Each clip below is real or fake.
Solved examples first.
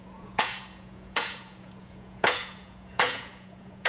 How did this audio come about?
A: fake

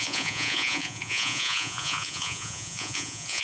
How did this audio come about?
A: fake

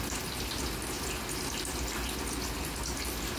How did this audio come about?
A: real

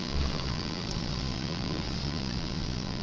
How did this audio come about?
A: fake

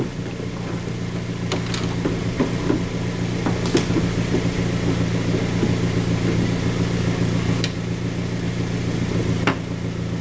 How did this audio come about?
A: real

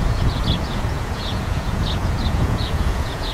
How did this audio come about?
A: fake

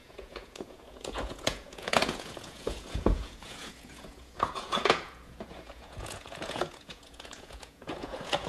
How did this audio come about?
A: fake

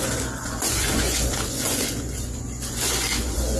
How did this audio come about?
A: fake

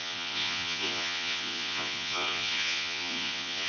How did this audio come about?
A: fake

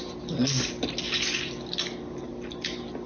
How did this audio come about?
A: real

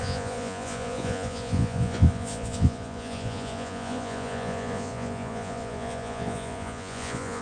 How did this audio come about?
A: fake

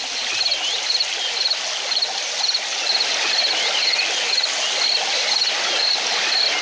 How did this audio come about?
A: real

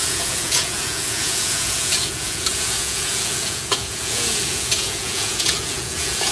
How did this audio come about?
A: fake